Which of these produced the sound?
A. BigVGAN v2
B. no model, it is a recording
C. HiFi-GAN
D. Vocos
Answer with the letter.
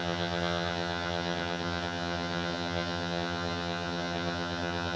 C